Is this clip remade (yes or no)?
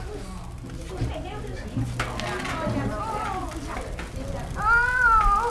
no